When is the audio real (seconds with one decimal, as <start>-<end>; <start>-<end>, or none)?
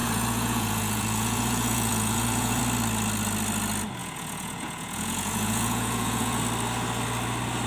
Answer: 2.6-4.0; 6.4-7.7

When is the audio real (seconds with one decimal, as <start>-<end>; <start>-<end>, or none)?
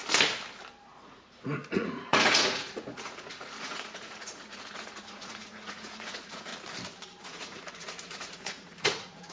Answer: 0.0-0.8; 6.5-7.2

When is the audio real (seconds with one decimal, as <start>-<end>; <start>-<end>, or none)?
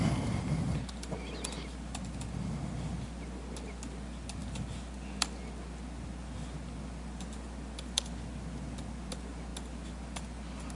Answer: 0.0-10.8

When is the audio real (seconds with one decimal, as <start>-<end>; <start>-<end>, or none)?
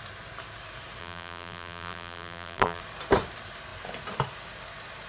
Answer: 0.0-1.0; 2.8-5.1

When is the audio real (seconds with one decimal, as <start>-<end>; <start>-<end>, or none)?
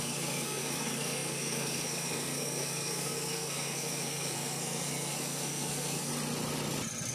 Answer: 6.1-7.1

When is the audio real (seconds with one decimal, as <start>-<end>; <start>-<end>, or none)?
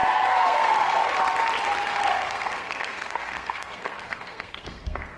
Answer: 1.1-1.9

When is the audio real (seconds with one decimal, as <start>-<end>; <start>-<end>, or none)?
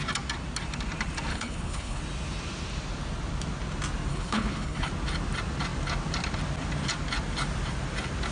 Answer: 0.0-1.3; 2.0-4.1; 4.9-8.3